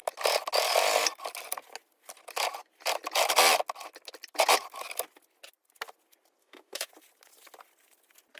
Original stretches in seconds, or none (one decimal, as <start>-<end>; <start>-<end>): 0.0-6.4; 6.9-8.4